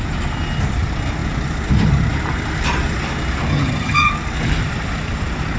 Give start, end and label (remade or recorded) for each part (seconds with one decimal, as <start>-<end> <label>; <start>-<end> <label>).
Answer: 0.0-3.5 recorded; 3.5-4.1 remade; 4.1-5.6 recorded

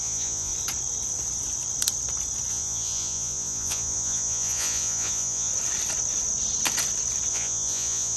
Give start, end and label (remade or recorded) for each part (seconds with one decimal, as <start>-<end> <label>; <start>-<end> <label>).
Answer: 0.0-0.5 remade; 0.5-2.5 recorded; 2.5-5.5 remade; 5.5-7.3 recorded; 7.3-8.2 remade

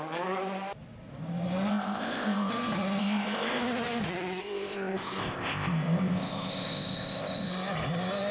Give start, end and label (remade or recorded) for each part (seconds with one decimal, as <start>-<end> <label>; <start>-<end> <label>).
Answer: 0.0-1.7 recorded; 1.7-2.5 remade; 2.5-3.0 recorded; 3.0-3.6 remade; 3.6-4.4 recorded; 4.4-7.5 remade; 7.5-8.3 recorded

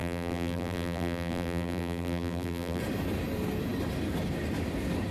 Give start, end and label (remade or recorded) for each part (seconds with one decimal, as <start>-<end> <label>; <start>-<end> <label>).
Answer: 0.0-2.8 remade; 2.8-5.1 recorded

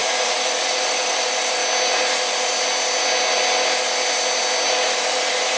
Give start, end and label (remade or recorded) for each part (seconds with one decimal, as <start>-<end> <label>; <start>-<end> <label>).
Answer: 0.0-1.6 remade; 1.6-5.0 recorded; 5.0-5.6 remade